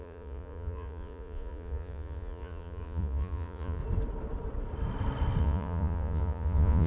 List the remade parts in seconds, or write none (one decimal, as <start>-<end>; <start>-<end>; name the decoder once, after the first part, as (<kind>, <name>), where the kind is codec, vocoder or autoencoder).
0.0-3.8 (vocoder, Vocos); 5.4-6.9

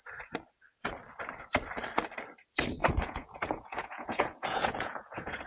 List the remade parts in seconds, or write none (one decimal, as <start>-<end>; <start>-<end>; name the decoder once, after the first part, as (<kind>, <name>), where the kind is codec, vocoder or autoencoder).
2.8-5.5 (vocoder, Vocos)

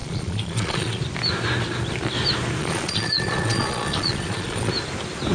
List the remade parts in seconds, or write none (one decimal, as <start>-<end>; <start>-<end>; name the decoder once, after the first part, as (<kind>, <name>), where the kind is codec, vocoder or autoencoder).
0.0-1.0 (vocoder, Vocos); 2.6-4.7

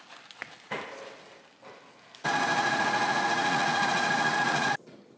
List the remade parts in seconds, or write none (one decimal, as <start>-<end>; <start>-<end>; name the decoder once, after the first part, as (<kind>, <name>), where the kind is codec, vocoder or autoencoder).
2.5-4.7 (vocoder, Vocos)

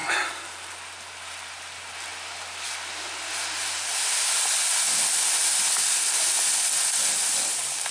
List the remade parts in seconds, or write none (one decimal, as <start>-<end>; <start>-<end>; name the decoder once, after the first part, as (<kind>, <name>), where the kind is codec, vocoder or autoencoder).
none

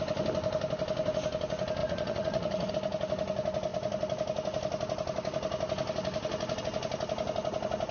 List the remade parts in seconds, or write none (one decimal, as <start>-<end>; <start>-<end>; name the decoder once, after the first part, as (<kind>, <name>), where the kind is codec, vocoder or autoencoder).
1.8-2.7 (vocoder, Vocos)

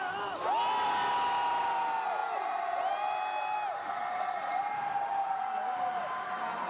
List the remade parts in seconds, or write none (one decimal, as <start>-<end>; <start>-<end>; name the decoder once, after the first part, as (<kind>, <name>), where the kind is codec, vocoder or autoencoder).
none

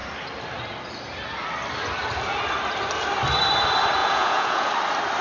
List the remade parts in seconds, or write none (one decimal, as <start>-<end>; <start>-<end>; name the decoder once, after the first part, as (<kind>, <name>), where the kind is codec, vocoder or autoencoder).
4.0-4.7 (vocoder, Vocos)